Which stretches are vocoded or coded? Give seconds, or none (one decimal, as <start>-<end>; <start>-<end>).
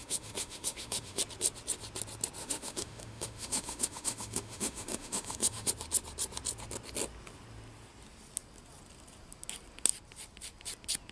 0.0-1.2; 2.4-5.7